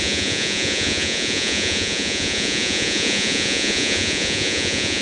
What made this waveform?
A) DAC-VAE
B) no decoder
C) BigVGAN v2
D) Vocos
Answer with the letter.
D